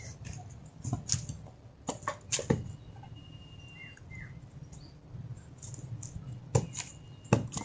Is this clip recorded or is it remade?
recorded